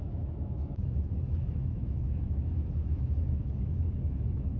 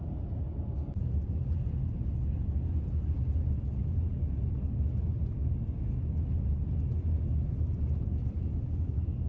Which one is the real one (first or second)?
second